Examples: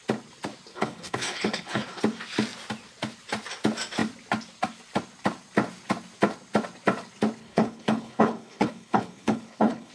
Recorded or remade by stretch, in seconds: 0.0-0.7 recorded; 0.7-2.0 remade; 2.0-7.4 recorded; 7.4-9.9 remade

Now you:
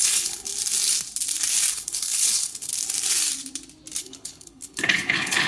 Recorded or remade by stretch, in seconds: 0.0-0.5 remade; 0.5-1.7 recorded; 1.7-2.7 remade; 2.7-4.0 recorded; 4.0-5.5 remade

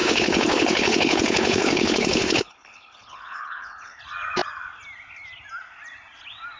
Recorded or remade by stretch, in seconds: 0.0-4.0 remade; 4.0-6.6 recorded

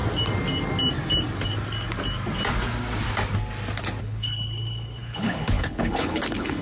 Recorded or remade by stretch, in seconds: 0.0-4.0 recorded; 4.0-6.6 remade